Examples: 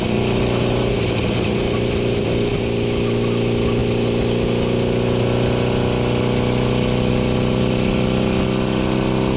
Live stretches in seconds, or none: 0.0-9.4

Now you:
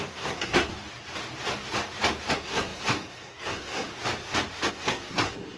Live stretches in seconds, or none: 0.7-2.3; 3.9-4.7